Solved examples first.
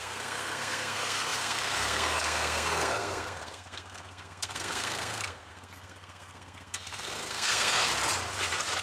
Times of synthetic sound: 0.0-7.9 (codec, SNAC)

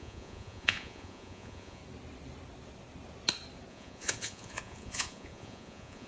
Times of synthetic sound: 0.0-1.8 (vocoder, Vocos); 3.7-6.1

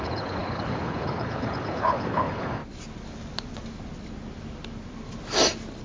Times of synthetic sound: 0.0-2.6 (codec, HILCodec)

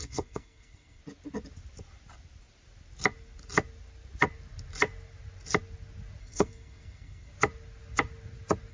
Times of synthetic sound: 0.0-1.0 (codec, SNAC); 6.2-7.3